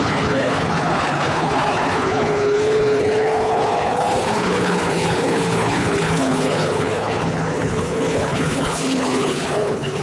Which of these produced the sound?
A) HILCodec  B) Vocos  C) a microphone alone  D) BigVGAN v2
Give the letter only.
A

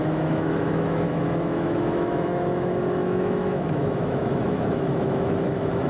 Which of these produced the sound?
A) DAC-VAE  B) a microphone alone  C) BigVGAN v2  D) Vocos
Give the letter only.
A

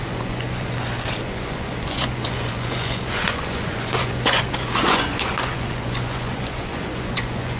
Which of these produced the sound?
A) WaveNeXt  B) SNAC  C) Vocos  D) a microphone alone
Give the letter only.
C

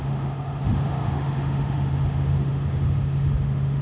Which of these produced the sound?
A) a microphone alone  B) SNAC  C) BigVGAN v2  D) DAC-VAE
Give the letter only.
D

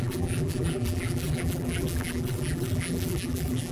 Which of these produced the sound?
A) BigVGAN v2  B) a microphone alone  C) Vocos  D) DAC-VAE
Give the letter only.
A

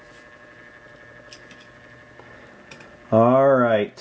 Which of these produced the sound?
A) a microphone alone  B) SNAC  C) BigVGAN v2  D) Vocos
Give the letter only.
A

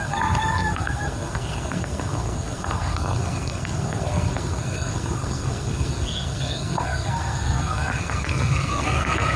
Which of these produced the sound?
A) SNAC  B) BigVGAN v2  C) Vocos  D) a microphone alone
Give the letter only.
A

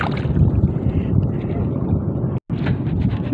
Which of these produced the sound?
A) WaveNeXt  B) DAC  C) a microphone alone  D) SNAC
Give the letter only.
C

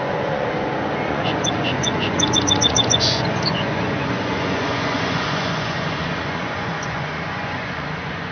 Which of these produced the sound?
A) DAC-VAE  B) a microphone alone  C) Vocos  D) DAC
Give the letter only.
C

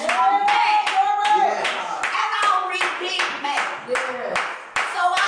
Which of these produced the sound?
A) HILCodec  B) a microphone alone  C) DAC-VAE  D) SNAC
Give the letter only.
B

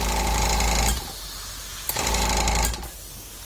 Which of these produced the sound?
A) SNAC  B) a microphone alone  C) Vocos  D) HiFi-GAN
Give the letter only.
B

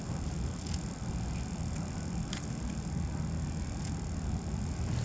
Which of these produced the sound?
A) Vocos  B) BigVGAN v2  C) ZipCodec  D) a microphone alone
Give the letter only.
D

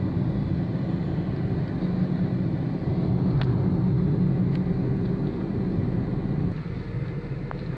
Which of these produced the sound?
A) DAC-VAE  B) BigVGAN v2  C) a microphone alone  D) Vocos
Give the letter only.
C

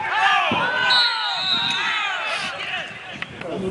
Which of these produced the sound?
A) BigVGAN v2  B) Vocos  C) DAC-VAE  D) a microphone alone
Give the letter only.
D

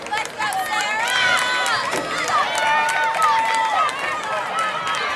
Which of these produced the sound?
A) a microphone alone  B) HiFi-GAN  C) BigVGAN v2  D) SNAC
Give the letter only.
A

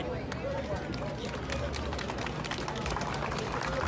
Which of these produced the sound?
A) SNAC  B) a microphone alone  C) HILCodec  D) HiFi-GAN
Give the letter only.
B